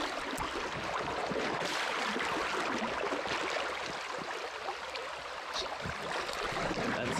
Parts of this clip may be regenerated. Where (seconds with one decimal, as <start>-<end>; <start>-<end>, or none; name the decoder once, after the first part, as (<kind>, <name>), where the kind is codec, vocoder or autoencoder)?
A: none